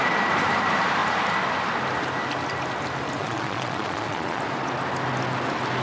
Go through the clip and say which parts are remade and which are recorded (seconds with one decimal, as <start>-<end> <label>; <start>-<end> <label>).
0.0-3.2 recorded; 3.2-4.4 remade; 4.4-5.8 recorded